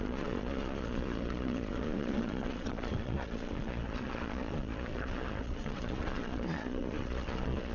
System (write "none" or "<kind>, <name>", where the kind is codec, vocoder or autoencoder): vocoder, Vocos